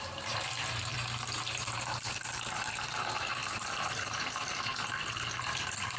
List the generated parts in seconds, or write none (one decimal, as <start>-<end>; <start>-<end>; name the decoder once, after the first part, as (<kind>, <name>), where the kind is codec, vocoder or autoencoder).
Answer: 0.0-4.7 (vocoder, BigVGAN v2); 5.4-6.0